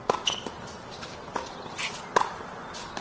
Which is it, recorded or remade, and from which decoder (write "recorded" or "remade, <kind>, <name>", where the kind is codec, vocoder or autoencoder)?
recorded